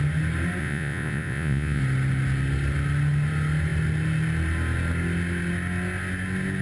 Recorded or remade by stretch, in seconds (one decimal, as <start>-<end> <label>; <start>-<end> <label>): 0.0-0.6 recorded; 0.6-1.8 remade; 1.8-6.6 recorded